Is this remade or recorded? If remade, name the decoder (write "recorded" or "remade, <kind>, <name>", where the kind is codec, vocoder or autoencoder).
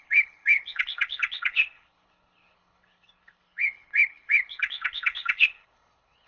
remade, codec, HILCodec